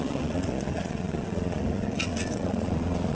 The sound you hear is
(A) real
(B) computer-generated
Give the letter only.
B